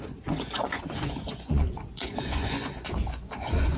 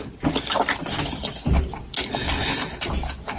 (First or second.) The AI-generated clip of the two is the first